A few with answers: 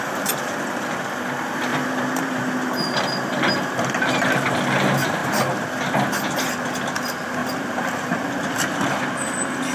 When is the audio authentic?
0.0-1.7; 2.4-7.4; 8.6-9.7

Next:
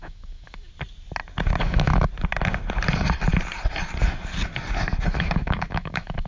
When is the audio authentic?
0.7-1.6; 2.1-5.1

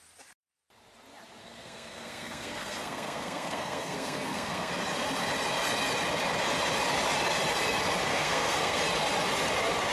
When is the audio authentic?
0.0-1.4; 4.7-8.1; 8.8-9.9